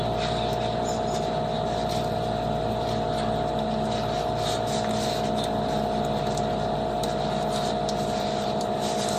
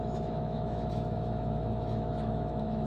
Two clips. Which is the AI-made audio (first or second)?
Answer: second